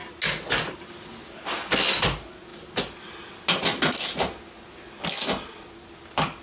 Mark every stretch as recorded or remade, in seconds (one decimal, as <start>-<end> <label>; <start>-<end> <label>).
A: 0.0-6.4 recorded